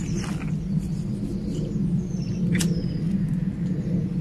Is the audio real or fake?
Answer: real